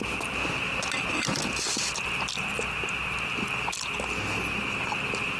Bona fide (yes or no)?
yes